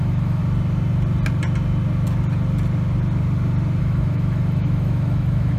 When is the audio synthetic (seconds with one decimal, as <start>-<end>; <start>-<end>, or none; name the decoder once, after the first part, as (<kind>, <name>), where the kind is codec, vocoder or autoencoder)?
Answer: 0.0-0.4 (autoencoder, DAC-VAE); 3.8-5.6